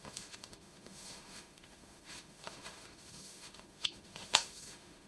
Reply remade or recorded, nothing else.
remade